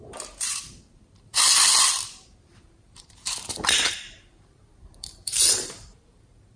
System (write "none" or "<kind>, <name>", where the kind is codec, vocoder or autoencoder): vocoder, BigVGAN v2